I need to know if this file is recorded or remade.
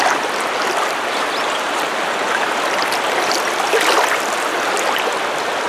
recorded